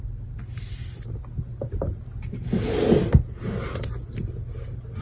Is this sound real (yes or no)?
yes